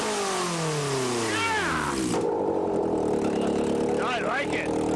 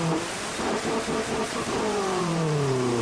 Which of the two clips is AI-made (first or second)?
second